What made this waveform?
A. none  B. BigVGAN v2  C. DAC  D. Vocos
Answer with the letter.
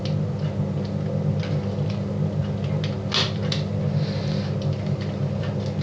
A